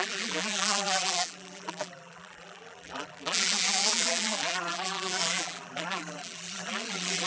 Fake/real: fake